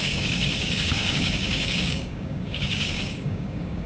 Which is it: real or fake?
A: fake